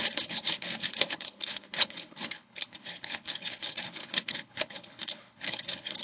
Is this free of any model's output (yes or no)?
no